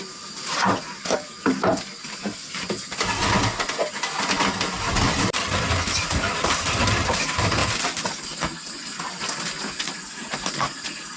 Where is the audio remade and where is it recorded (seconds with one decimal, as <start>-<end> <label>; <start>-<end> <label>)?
0.0-1.7 remade; 1.7-6.1 recorded; 6.1-7.6 remade; 7.6-9.6 recorded; 9.6-11.2 remade